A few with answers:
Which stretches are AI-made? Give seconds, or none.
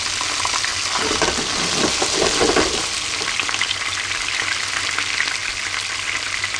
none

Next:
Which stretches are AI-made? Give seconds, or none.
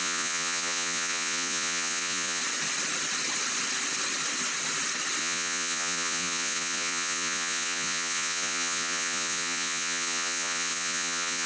0.0-2.4; 5.2-11.5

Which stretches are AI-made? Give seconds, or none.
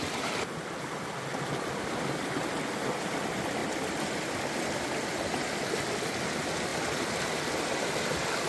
none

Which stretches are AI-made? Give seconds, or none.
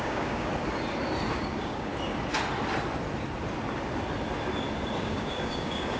0.0-0.5; 1.3-1.9; 5.0-6.0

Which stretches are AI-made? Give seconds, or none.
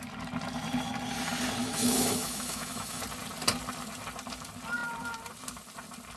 1.6-3.0